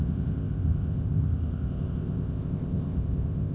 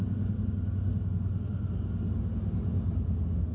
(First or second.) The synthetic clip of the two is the first